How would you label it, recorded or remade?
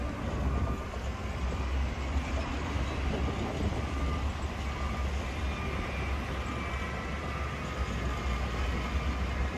recorded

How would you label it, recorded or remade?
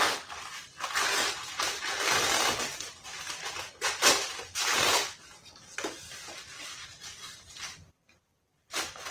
recorded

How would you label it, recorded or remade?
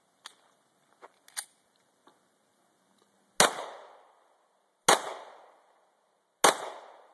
recorded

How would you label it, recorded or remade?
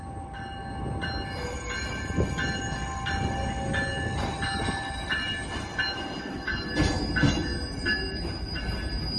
recorded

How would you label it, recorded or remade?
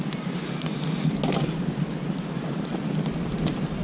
recorded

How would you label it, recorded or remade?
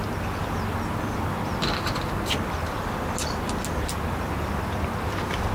recorded